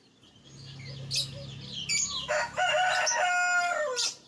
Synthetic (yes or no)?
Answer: no